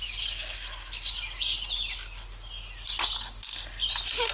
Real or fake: real